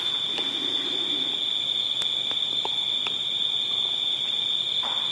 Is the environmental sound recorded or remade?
recorded